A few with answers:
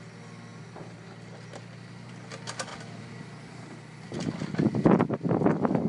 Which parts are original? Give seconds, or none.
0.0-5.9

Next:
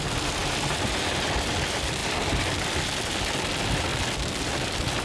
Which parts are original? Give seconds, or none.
3.9-4.4

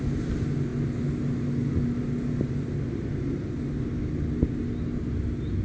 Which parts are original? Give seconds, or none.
0.0-5.6

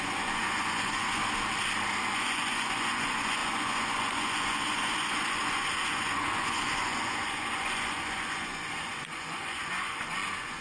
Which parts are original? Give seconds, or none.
1.2-2.1